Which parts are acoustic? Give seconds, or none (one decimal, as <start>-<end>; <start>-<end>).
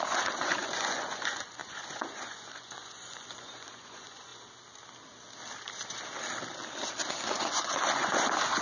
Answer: 4.3-7.1